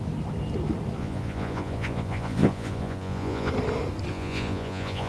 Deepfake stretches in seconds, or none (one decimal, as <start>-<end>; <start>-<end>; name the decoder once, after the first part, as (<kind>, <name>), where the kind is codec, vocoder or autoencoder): 1.0-3.5 (vocoder, Vocos); 4.1-5.1